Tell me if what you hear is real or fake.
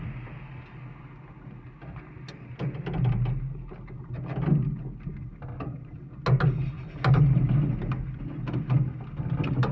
real